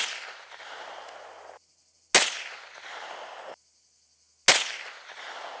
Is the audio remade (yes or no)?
no